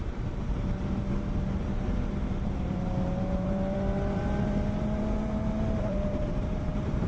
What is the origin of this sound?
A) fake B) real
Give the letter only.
A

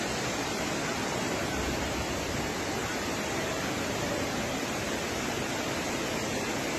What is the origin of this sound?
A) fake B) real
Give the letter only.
B